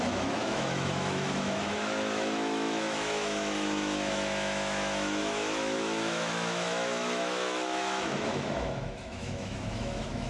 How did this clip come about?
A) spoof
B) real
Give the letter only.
A